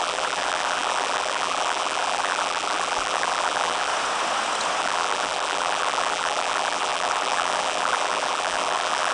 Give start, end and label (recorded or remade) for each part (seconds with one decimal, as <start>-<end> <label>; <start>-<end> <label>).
0.0-3.9 remade; 3.9-4.8 recorded; 4.8-9.1 remade

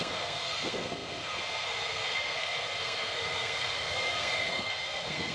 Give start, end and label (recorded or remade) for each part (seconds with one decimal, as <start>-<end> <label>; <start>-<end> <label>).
0.0-5.3 remade